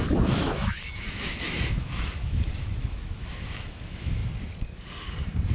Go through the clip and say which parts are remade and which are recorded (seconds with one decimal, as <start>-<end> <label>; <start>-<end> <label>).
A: 0.0-4.2 remade; 4.2-5.5 recorded